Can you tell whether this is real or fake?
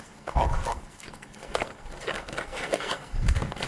fake